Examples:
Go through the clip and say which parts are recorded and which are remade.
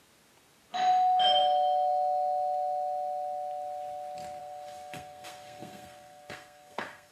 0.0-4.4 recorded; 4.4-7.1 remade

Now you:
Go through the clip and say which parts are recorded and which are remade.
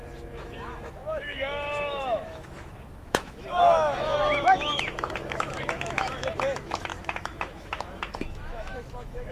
0.0-9.3 remade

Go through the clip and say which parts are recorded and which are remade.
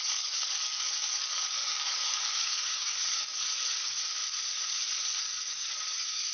0.0-4.2 remade; 4.2-5.2 recorded; 5.2-6.3 remade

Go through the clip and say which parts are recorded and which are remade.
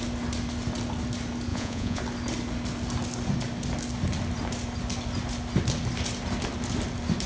0.0-1.5 recorded; 1.5-2.0 remade; 2.0-7.3 recorded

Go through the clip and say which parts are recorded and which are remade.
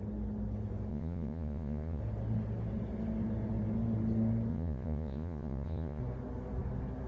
0.0-0.9 recorded; 0.9-2.0 remade; 2.0-4.5 recorded; 4.5-6.0 remade; 6.0-7.1 recorded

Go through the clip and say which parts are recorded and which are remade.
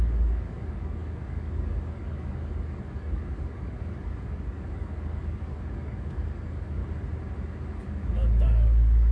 0.0-6.8 remade; 6.8-7.8 recorded; 7.8-9.1 remade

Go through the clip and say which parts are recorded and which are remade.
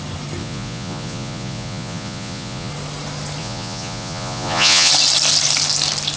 0.0-0.4 recorded; 0.4-2.7 remade; 2.7-3.4 recorded; 3.4-4.9 remade; 4.9-6.2 recorded